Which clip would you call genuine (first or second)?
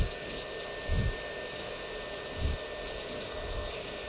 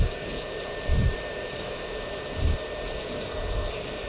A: first